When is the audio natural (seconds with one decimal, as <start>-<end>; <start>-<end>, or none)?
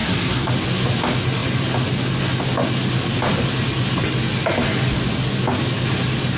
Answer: 0.5-6.4